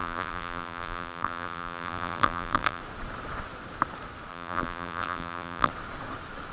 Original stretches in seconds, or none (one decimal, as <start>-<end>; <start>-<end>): 2.8-4.3; 5.7-6.5